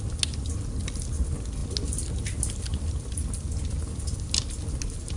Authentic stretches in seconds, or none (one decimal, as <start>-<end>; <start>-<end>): 0.0-5.2